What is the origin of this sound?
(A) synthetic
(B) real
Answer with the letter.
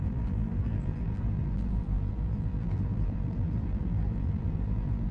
A